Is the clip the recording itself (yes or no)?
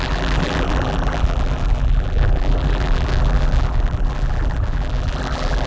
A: no